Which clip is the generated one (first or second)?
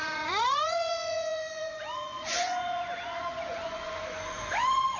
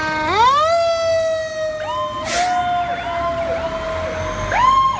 first